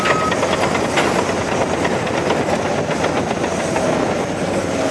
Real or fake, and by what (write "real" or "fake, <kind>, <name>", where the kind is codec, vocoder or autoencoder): real